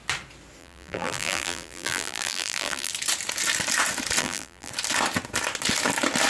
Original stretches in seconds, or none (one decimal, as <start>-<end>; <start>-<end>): 0.0-0.6; 2.9-4.2; 4.7-6.3